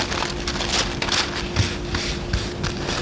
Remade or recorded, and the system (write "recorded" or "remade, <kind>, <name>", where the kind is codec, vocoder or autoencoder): recorded